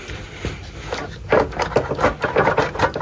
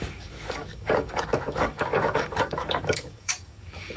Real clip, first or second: first